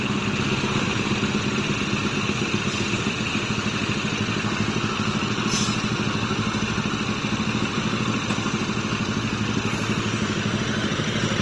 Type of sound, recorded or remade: recorded